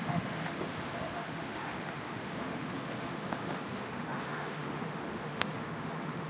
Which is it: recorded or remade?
remade